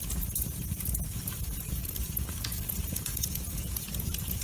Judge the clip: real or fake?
fake